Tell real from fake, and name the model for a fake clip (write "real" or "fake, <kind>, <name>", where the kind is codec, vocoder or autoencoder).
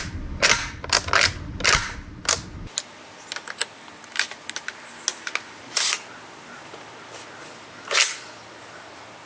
real